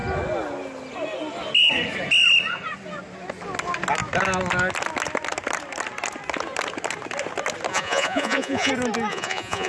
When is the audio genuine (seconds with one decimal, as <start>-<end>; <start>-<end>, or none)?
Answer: 0.0-7.7; 8.7-9.1